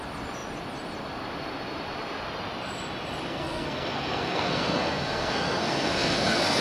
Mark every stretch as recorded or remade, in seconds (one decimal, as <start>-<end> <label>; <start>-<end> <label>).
0.0-3.3 recorded; 3.3-6.6 remade